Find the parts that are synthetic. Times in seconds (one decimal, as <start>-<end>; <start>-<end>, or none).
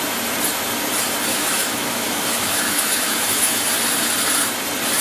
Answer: 1.3-3.6